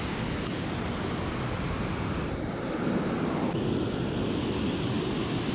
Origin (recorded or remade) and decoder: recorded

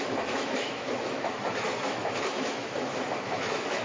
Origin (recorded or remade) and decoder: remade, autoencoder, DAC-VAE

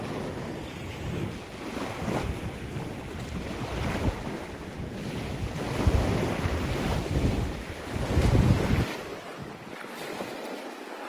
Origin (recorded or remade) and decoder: recorded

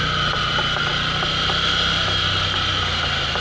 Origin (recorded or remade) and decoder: recorded